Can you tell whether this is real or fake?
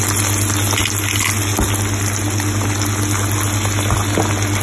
real